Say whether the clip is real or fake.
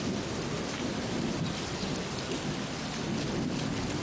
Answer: real